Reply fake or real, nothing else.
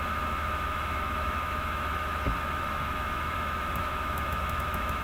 fake